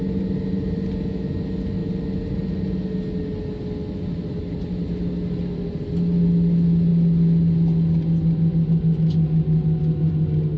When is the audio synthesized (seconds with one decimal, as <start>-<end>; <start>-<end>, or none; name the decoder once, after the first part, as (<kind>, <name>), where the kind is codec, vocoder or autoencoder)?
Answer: none